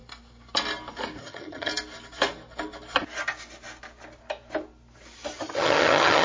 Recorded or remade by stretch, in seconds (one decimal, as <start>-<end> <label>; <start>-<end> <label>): 0.0-1.2 recorded; 1.2-1.7 remade; 1.7-5.4 recorded; 5.4-6.2 remade